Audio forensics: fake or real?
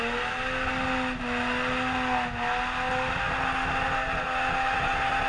real